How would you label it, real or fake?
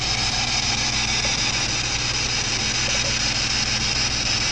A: real